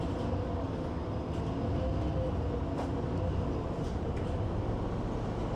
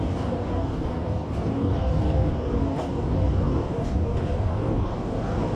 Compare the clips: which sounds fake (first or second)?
second